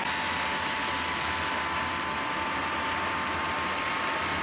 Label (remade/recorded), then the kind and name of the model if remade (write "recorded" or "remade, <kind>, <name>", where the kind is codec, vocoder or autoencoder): recorded